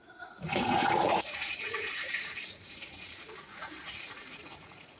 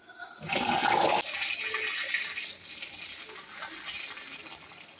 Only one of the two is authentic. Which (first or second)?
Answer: second